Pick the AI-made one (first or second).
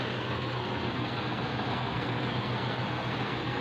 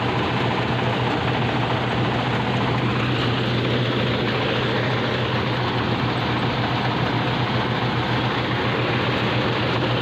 first